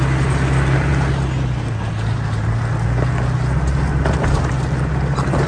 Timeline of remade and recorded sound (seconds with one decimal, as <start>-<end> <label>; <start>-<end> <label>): 0.0-5.5 recorded